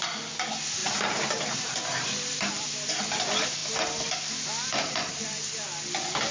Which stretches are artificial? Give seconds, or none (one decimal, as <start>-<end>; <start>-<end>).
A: 0.8-2.9